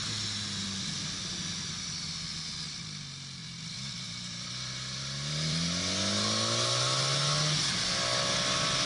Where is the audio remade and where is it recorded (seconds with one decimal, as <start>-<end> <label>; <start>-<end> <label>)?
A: 0.0-3.4 recorded; 3.4-5.8 remade; 5.8-8.9 recorded